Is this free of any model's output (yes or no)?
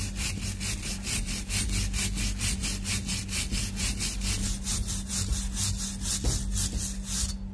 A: yes